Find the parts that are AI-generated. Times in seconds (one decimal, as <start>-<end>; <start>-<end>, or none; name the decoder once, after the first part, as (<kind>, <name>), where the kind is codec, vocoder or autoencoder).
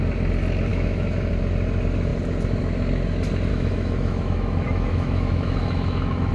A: 0.7-1.3 (autoencoder, DAC-VAE); 3.5-6.3